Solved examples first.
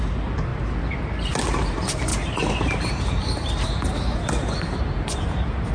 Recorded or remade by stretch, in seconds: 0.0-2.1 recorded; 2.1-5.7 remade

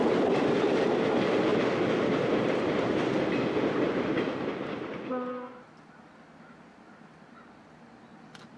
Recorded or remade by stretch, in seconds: 0.0-8.6 recorded

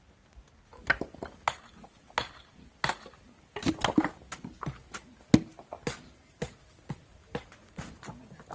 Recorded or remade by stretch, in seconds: 0.0-8.5 recorded

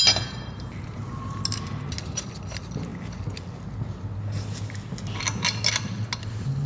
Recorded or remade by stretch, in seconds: 0.0-6.7 recorded

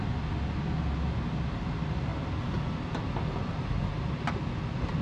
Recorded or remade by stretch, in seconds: 0.0-5.0 recorded

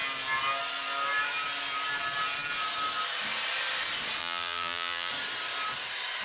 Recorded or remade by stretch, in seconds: 0.0-4.2 recorded; 4.2-5.1 remade; 5.1-6.2 recorded

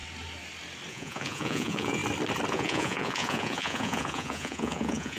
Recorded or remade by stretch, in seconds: 0.0-0.9 recorded; 0.9-2.0 remade; 2.0-2.5 recorded; 2.5-5.2 remade

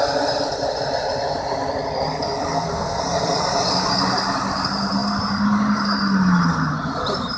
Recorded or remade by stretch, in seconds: 0.0-2.5 recorded; 2.5-3.0 remade; 3.0-7.4 recorded